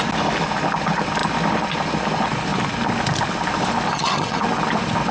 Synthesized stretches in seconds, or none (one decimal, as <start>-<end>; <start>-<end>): 3.9-4.4